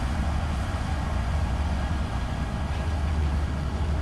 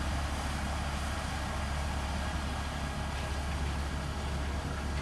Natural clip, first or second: second